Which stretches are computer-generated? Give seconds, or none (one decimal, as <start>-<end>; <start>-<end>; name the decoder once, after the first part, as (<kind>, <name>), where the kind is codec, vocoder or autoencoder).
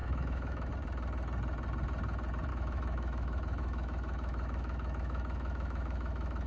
0.0-0.7 (autoencoder, DAC-VAE); 2.5-6.5